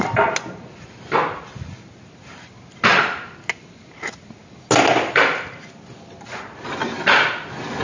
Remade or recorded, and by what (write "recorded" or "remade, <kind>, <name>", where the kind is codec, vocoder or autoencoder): recorded